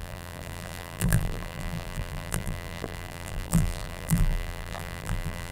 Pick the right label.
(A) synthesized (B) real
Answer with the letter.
A